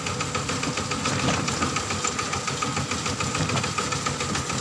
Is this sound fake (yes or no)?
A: no